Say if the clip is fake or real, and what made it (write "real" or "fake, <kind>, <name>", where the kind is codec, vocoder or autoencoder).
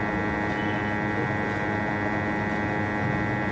real